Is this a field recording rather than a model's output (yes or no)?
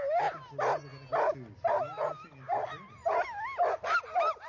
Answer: yes